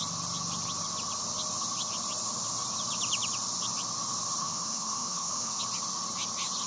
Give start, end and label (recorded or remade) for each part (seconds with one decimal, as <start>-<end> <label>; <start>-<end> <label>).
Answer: 0.0-4.4 recorded; 4.4-5.6 remade; 5.6-6.7 recorded